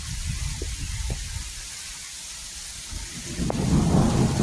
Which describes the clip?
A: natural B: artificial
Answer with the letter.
A